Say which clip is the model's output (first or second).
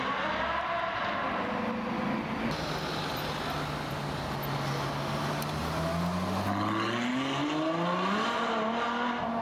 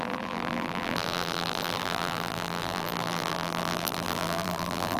second